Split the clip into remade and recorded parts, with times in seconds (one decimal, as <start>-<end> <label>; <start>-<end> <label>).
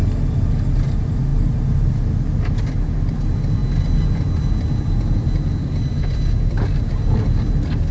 0.0-7.9 recorded